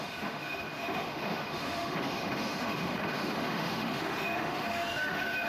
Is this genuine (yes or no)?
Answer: no